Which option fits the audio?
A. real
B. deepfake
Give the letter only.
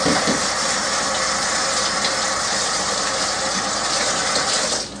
A